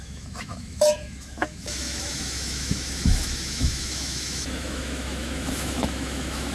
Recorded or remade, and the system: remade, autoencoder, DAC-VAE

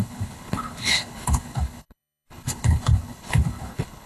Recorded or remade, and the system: remade, codec, HILCodec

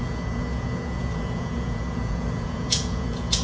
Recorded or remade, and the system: remade, vocoder, Vocos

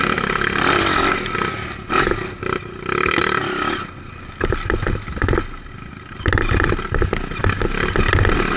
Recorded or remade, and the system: recorded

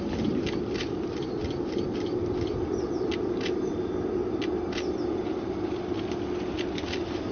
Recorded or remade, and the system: recorded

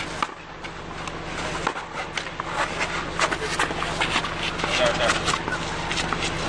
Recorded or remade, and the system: recorded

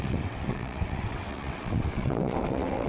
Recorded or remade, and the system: remade, vocoder, WaveNeXt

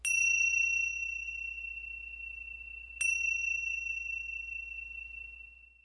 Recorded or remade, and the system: recorded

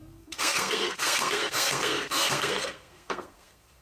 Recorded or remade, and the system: remade, codec, SNAC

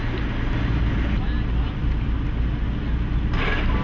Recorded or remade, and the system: recorded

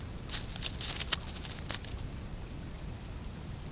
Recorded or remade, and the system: recorded